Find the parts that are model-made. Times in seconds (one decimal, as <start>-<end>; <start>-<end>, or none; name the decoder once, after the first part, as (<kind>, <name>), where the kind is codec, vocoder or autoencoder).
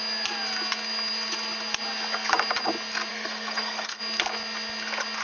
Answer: 3.1-4.0 (codec, SNAC)